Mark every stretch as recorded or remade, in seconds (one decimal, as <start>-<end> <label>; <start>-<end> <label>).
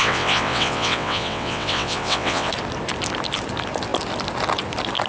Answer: 0.0-2.5 remade; 2.5-5.1 recorded